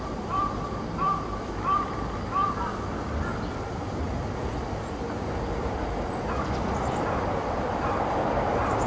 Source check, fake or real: real